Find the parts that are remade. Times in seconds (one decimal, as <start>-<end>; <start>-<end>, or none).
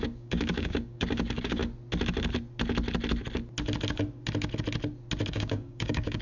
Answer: 0.0-1.6; 5.3-6.2